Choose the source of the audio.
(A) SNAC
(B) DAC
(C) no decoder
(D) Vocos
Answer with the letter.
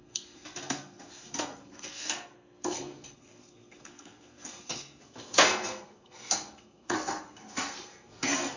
A